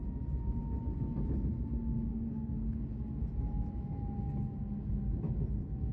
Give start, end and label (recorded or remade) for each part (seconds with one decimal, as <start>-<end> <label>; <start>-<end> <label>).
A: 0.0-2.1 recorded; 2.1-2.8 remade; 2.8-5.9 recorded